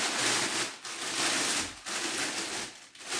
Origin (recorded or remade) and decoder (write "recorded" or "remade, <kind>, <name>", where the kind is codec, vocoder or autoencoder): recorded